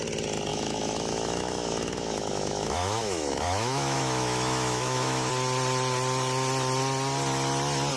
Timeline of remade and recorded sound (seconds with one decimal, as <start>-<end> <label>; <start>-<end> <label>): 0.0-0.5 recorded; 0.5-5.3 remade; 5.3-8.0 recorded

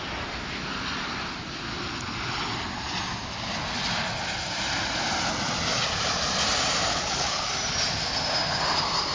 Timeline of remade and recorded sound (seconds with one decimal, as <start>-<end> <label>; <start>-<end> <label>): 0.0-6.9 recorded; 6.9-7.5 remade; 7.5-9.1 recorded

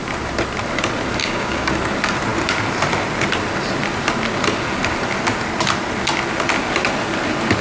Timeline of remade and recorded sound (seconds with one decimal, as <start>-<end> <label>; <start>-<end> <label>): 0.0-1.2 recorded; 1.2-1.7 remade; 1.7-7.6 recorded

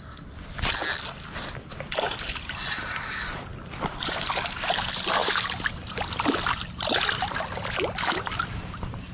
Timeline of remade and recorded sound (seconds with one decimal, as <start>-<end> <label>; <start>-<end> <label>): 0.0-5.2 recorded; 5.2-7.2 remade; 7.2-9.1 recorded